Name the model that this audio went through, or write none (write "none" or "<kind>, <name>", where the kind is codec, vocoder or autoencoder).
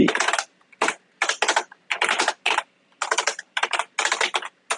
none